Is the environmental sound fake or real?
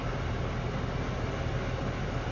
real